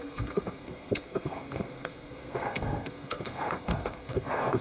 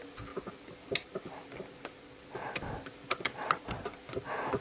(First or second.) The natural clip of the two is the second